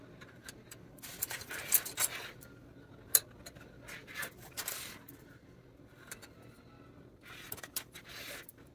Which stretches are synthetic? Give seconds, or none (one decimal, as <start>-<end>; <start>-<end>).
4.0-5.1